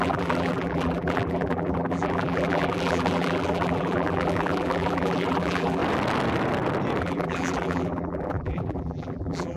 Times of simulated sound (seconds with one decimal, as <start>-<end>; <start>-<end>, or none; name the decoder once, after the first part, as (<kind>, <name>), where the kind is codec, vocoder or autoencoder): 0.0-5.8 (vocoder, BigVGAN v2); 7.0-9.6